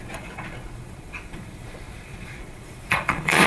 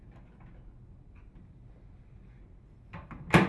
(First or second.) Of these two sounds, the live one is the second